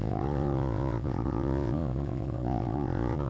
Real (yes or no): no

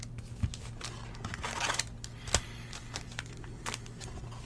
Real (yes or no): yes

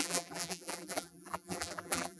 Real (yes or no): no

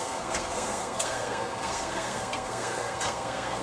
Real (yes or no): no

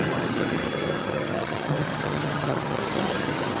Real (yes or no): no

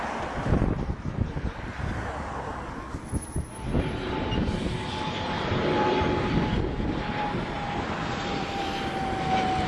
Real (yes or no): no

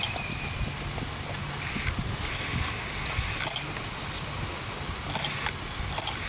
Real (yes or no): yes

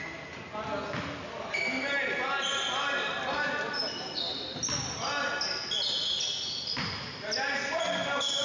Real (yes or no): yes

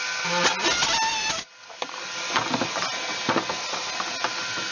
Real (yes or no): yes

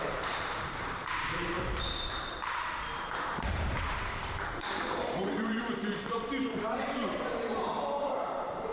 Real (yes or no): no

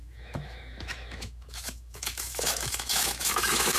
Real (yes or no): no